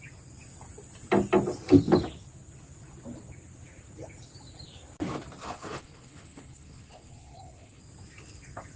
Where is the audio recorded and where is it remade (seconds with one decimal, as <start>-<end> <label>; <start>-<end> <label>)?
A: 0.0-5.4 recorded; 5.4-7.8 remade; 7.8-8.8 recorded